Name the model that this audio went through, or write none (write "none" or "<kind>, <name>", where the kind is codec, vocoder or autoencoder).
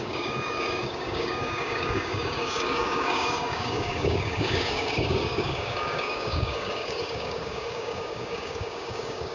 codec, DAC